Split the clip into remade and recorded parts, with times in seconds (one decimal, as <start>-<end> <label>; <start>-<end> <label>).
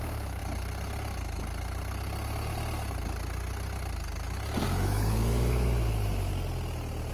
0.0-0.4 remade; 0.4-4.7 recorded; 4.7-6.3 remade; 6.3-7.1 recorded